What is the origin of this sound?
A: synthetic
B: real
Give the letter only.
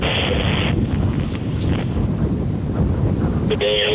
B